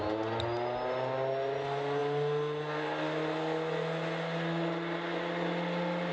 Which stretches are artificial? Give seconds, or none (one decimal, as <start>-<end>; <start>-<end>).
none